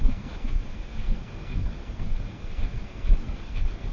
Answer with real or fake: fake